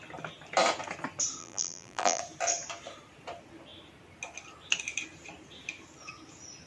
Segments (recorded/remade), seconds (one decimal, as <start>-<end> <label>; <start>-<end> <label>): 0.0-1.4 recorded; 1.4-2.2 remade; 2.2-6.7 recorded